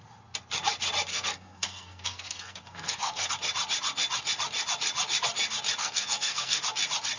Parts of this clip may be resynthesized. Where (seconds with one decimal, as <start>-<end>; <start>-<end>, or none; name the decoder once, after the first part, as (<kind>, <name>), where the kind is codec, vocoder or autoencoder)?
1.1-3.3 (codec, SNAC); 5.8-6.6